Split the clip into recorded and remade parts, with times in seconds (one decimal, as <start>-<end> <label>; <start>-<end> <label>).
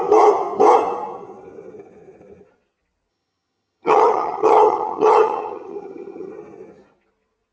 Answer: 0.0-3.1 recorded; 3.1-6.3 remade; 6.3-7.5 recorded